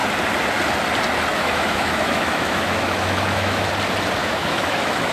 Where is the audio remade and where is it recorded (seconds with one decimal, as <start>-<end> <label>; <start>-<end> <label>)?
0.0-1.3 recorded; 1.3-3.7 remade; 3.7-4.2 recorded; 4.2-5.1 remade